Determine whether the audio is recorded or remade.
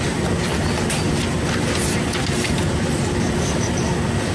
recorded